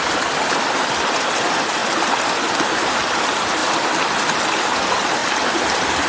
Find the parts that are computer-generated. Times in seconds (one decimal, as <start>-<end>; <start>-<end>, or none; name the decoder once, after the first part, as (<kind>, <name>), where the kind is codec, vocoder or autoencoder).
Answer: none